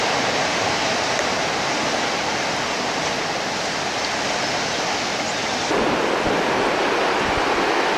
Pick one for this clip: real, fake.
real